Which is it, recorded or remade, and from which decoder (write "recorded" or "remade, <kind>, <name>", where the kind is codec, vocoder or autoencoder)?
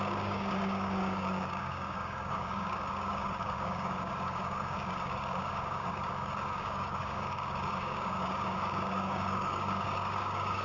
remade, codec, DAC